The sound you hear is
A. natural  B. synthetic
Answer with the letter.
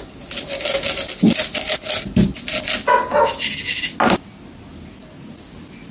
A